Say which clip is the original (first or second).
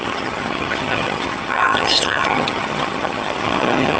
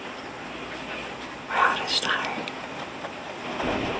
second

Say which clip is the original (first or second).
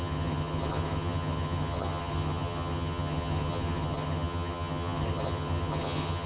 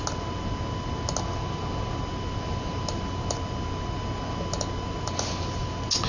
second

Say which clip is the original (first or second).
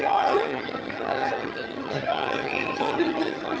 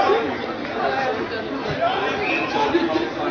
second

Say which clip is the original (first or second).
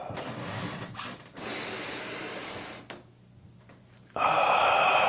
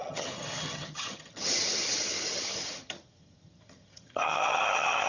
first